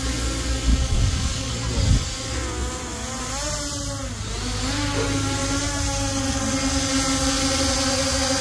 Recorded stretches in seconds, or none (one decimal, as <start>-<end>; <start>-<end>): 0.0-0.7; 1.5-8.4